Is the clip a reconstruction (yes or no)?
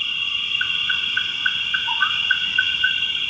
yes